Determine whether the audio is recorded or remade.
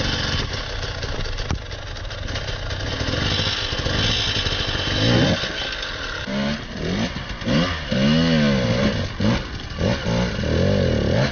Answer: recorded